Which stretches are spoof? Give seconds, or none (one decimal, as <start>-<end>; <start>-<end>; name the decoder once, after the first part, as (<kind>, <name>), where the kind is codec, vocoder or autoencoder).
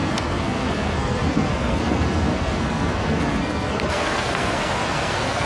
0.0-5.5 (codec, SNAC)